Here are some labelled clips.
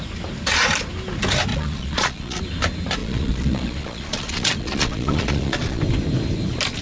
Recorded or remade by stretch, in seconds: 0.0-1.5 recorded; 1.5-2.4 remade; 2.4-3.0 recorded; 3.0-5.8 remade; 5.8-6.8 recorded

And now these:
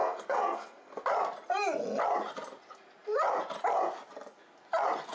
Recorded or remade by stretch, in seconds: 0.0-1.0 remade; 1.0-5.1 recorded